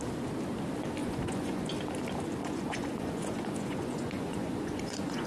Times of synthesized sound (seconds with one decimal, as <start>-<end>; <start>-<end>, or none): 1.0-1.7; 2.4-5.3